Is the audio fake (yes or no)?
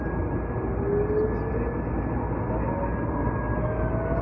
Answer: no